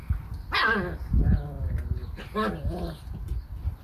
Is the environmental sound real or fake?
real